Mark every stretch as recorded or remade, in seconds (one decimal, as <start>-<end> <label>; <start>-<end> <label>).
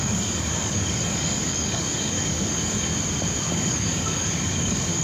0.0-2.9 remade; 2.9-3.5 recorded; 3.5-5.0 remade